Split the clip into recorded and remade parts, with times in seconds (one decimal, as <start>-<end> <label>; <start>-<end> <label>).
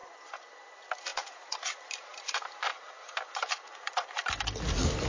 0.0-0.7 remade; 0.7-1.1 recorded; 1.1-4.2 remade; 4.2-5.1 recorded